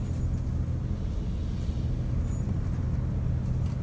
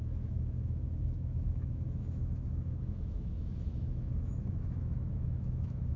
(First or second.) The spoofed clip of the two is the second